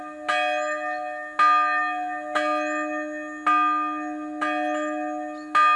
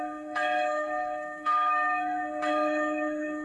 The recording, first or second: first